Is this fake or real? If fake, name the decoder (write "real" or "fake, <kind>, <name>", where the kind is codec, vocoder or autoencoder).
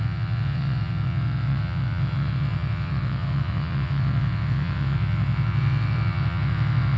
fake, vocoder, WaveNeXt